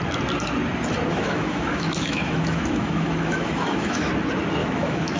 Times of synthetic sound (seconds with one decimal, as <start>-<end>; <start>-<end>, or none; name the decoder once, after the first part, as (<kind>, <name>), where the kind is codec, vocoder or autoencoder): 1.1-4.1 (autoencoder, DAC-VAE); 4.6-5.2